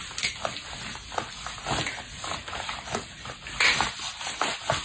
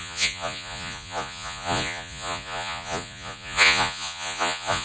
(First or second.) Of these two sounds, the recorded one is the first